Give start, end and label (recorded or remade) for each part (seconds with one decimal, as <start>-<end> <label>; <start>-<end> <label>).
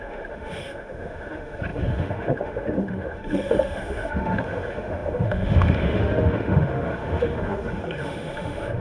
0.0-8.8 remade